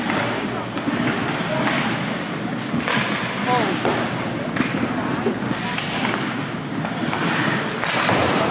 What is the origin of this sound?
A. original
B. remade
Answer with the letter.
A